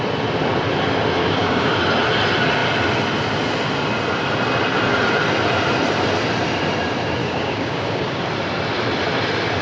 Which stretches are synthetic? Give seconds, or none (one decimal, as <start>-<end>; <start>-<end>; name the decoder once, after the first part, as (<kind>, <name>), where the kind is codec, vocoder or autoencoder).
1.2-1.7 (codec, DAC); 7.2-8.2